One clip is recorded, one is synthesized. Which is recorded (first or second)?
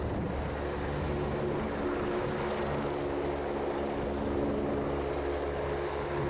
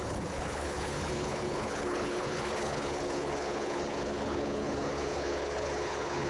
first